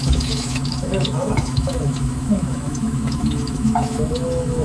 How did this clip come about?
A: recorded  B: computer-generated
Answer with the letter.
B